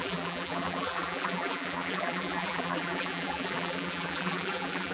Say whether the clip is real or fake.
fake